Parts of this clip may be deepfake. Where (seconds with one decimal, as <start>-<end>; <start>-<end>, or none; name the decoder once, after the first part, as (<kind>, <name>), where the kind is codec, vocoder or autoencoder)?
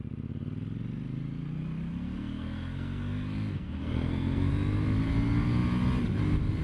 1.9-4.5 (codec, SNAC)